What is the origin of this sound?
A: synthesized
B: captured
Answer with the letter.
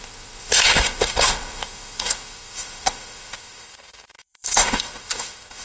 A